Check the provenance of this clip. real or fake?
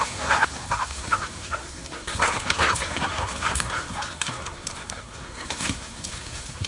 fake